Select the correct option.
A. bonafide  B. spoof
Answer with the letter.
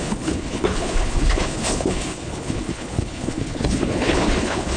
B